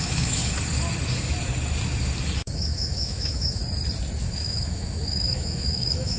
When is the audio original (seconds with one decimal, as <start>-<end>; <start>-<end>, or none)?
0.4-2.4; 3.6-4.2